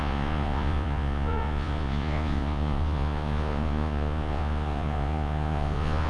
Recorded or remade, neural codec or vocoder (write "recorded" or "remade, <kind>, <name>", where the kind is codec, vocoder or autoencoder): remade, vocoder, Vocos